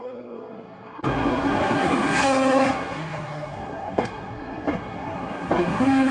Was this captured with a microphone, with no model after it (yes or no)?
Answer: no